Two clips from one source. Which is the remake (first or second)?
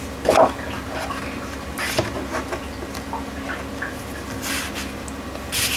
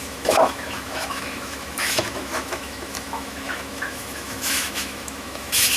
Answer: second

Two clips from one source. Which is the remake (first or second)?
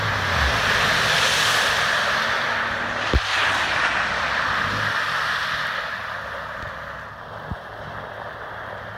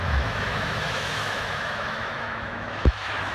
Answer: second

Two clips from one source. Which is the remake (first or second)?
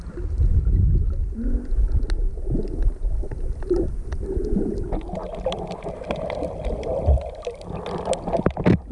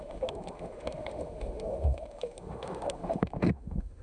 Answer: second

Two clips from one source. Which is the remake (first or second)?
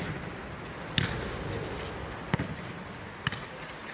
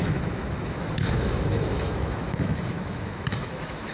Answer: second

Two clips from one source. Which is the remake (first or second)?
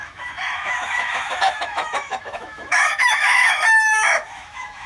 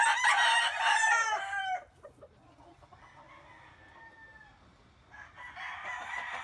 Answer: first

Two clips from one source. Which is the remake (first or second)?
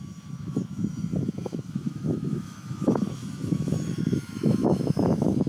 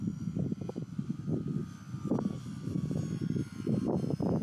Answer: first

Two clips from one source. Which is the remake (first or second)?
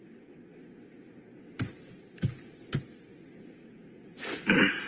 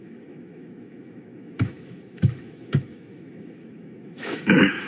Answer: second